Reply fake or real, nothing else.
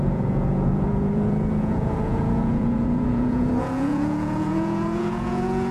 fake